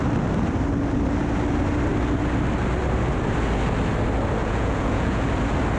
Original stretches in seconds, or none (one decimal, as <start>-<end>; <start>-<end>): 0.0-4.4; 5.2-5.8